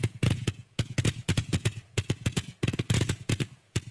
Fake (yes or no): yes